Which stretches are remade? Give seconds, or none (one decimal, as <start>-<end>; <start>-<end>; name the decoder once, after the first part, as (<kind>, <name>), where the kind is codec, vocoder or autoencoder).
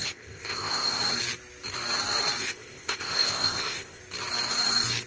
0.0-1.0 (codec, ZipCodec); 2.4-4.0